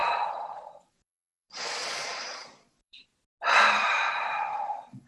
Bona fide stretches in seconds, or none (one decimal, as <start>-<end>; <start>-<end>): 3.1-4.1